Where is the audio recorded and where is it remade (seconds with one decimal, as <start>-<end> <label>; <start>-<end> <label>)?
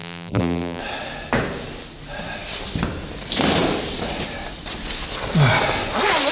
0.0-0.8 remade; 0.8-6.3 recorded